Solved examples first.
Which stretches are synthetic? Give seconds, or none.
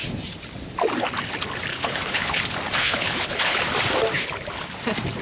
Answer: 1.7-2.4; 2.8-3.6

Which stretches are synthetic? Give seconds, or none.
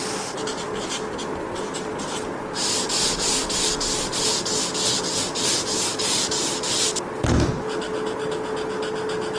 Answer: none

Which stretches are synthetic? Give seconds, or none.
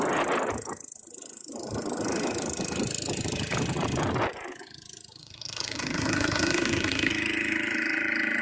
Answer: 5.2-7.1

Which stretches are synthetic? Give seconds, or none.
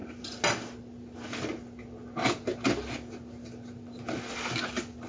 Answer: none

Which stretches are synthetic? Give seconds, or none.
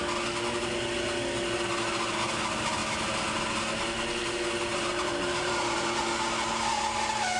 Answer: 4.7-6.0